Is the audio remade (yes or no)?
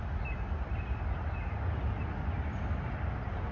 no